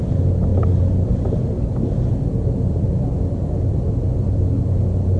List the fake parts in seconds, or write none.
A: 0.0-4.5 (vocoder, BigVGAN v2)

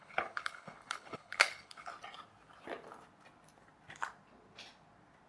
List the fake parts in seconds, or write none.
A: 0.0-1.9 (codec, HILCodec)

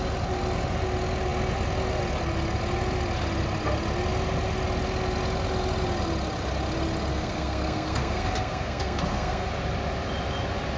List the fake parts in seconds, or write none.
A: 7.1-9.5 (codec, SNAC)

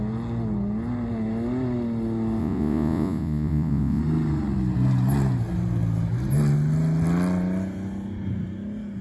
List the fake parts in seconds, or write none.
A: 2.4-4.0 (vocoder, Vocos)

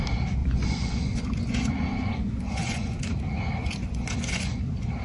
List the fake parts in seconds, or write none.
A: 0.4-3.0 (vocoder, Vocos); 3.6-4.6

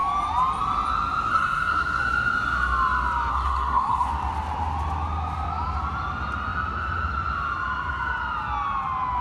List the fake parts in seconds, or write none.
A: 1.3-2.0 (codec, SNAC); 3.3-4.1